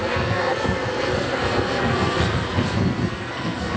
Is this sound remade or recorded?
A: remade